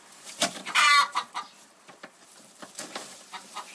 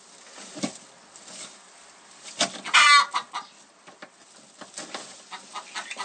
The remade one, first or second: first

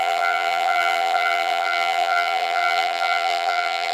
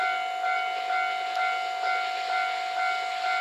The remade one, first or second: first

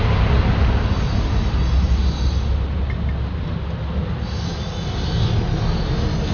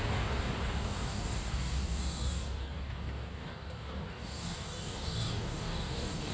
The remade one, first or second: second